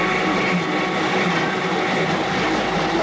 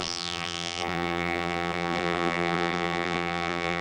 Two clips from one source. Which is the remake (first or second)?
second